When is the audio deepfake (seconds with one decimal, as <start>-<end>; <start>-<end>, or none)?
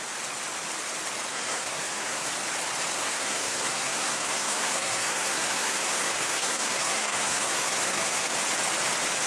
1.3-2.3; 3.0-8.3